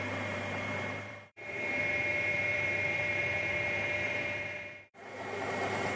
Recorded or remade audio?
remade